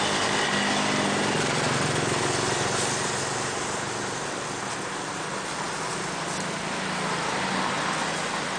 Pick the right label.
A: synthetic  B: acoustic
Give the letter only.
B